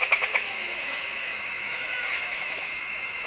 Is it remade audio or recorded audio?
remade